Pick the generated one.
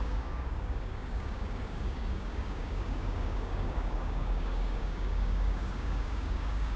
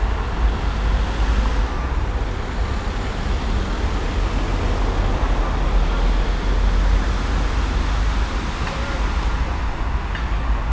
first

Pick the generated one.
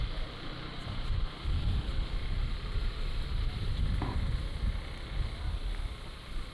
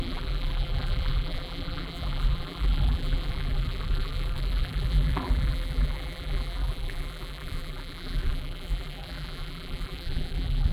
second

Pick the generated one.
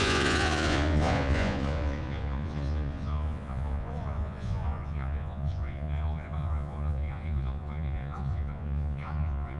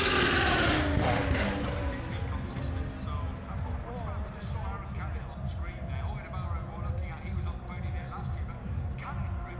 first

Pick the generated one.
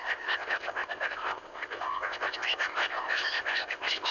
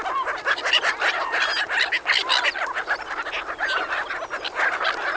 first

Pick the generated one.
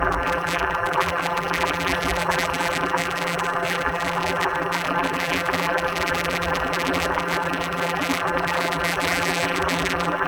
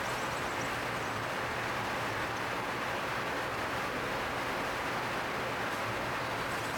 first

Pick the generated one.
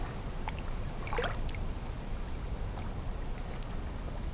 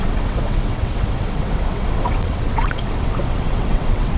second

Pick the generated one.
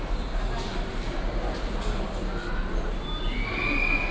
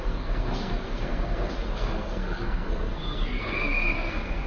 second